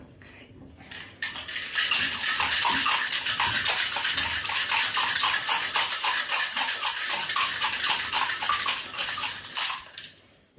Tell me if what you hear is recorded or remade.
recorded